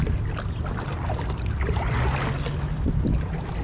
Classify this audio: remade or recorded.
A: recorded